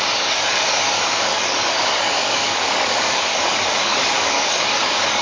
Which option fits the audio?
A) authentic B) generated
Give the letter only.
B